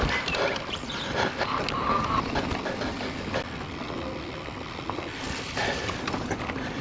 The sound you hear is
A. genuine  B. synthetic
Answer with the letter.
A